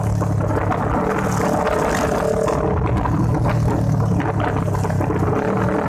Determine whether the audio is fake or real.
real